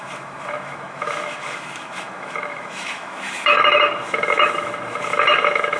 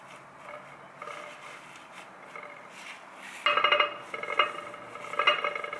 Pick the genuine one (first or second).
second